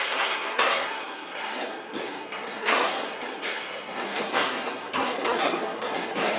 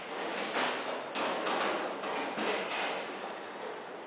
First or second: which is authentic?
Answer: second